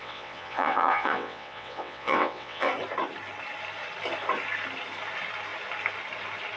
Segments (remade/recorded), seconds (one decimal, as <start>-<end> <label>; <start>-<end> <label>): 0.0-2.7 remade; 2.7-6.6 recorded